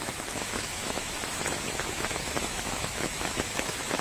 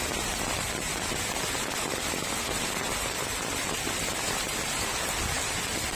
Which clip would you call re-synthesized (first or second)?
first